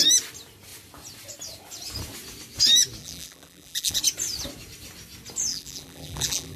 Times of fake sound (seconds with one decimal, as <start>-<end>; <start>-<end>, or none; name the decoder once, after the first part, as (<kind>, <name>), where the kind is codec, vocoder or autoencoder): 3.0-4.0 (vocoder, BigVGAN v2); 5.5-6.6